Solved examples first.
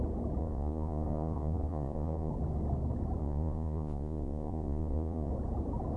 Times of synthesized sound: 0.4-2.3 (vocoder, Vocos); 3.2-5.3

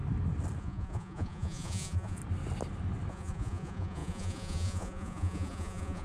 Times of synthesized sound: 0.6-2.2 (vocoder, Vocos); 3.1-6.0

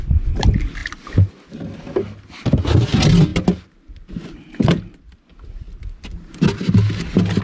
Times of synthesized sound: none

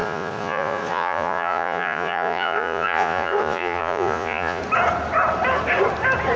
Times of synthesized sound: 0.0-4.6 (vocoder, Vocos)

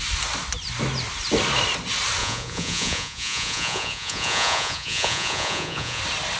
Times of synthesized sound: 2.2-6.0 (vocoder, Vocos)